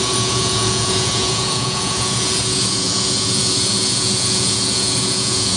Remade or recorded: remade